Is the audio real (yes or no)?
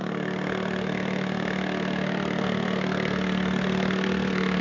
no